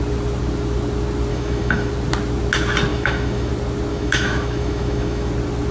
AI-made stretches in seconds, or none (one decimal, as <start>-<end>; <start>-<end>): 1.3-1.9; 2.9-3.5; 3.9-5.3